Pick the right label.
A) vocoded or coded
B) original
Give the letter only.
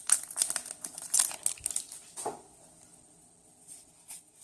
B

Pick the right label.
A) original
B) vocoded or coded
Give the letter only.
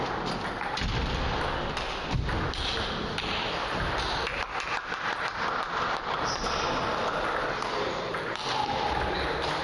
A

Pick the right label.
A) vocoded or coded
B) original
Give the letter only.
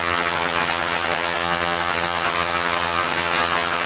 A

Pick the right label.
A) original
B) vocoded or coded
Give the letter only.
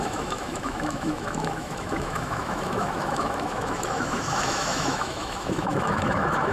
B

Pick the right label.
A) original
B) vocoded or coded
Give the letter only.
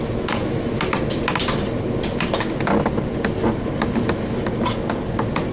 A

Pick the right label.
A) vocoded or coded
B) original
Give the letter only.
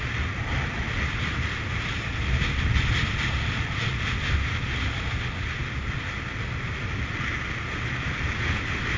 B